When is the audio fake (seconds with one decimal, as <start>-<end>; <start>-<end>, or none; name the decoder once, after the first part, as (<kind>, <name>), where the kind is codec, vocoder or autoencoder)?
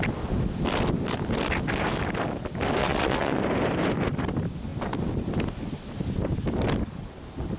2.8-3.4 (vocoder, WaveNeXt)